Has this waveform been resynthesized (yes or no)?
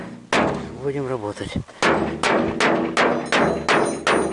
no